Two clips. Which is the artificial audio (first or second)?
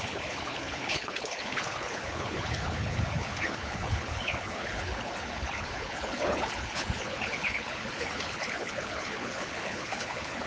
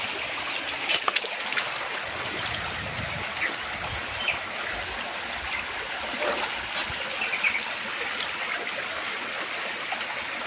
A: first